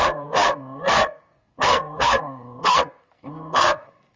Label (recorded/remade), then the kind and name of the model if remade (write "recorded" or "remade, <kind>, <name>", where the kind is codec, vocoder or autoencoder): remade, codec, SNAC